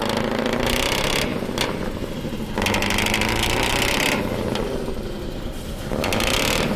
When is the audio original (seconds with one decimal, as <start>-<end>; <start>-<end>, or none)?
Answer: 0.0-6.8

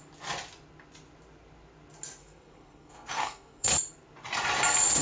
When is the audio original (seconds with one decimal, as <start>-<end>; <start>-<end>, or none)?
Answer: 0.0-2.2; 3.7-5.0

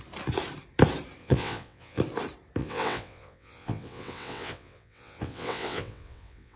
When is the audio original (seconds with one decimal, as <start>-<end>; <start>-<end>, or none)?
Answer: 0.0-1.2; 2.0-2.6

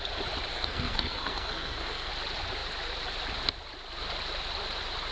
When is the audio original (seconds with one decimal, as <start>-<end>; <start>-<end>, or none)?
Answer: 0.0-0.5; 2.1-5.1